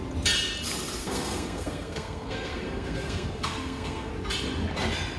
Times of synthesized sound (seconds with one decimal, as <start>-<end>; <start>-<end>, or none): 1.0-4.1